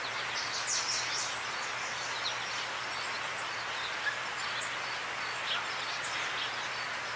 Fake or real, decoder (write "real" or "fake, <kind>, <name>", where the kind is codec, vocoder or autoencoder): real